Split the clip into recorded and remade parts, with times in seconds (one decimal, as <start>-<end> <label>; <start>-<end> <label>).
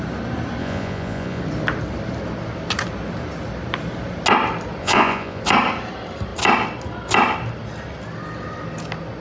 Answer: 0.0-0.6 recorded; 0.6-1.4 remade; 1.4-4.8 recorded; 4.8-5.4 remade; 5.4-9.2 recorded